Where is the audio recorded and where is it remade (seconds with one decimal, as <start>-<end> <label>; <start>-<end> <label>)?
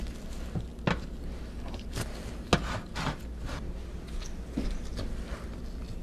0.0-6.0 recorded